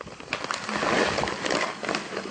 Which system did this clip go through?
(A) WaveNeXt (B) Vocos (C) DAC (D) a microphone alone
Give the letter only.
D